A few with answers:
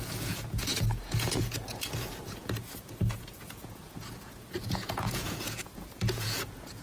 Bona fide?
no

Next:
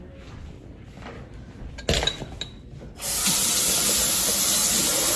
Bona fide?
yes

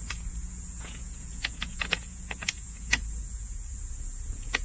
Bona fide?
no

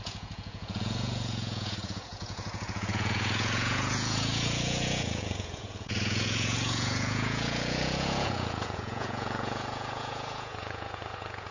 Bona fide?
no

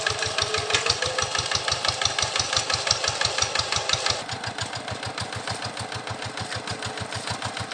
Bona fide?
yes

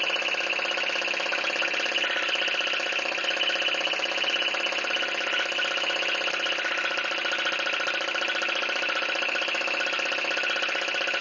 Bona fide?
yes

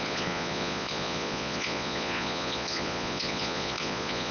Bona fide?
no